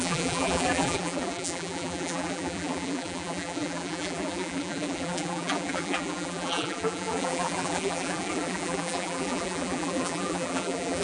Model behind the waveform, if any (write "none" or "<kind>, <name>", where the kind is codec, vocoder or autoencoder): vocoder, BigVGAN v2